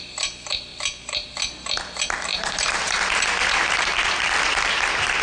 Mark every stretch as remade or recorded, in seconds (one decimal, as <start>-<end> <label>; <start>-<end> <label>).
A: 0.0-0.7 recorded; 0.7-1.3 remade; 1.3-2.3 recorded; 2.3-5.2 remade